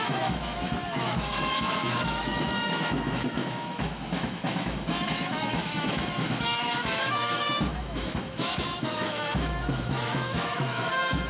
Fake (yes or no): yes